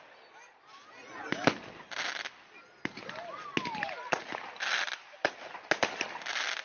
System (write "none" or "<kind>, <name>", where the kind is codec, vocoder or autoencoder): none